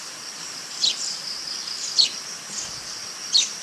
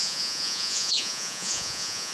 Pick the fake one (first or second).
second